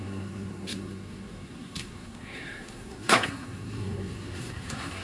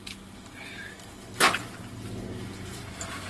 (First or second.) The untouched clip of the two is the second